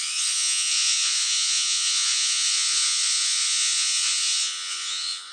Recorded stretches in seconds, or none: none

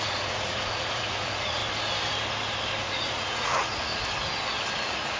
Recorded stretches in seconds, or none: 1.6-2.8; 3.9-4.8

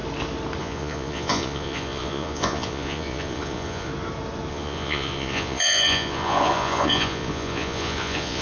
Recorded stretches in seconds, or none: 0.0-0.6; 3.9-4.5

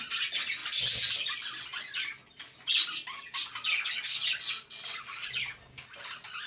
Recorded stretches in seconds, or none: 0.0-6.5

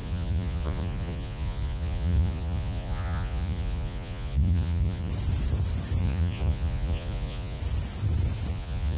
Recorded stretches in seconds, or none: 5.1-6.0; 7.6-8.5

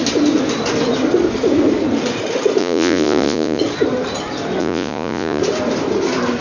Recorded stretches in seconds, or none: 0.0-2.6; 3.6-4.6; 5.4-6.4

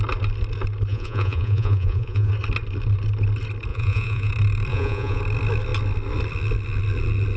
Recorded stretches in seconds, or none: 0.0-0.9; 2.3-3.7; 4.3-4.7; 5.2-7.4

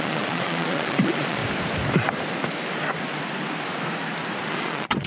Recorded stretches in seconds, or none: 1.4-4.5